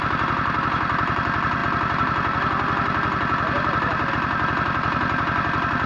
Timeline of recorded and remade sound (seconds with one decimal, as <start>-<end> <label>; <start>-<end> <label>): 0.0-5.9 recorded